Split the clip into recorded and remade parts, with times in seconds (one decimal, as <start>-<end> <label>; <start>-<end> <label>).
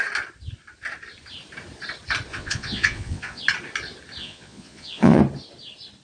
0.0-2.3 recorded; 2.3-3.4 remade; 3.4-4.2 recorded; 4.2-5.2 remade; 5.2-6.0 recorded